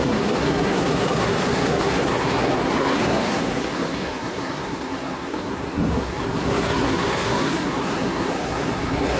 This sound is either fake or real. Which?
fake